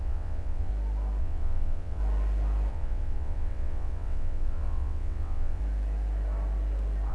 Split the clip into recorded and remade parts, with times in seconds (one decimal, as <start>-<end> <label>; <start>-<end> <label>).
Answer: 0.0-0.7 remade; 0.7-1.2 recorded; 1.2-2.0 remade; 2.0-2.7 recorded; 2.7-5.6 remade; 5.6-7.1 recorded